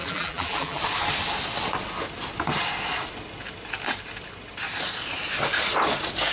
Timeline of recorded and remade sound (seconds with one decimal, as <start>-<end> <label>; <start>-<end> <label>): 0.0-0.8 remade; 0.8-6.3 recorded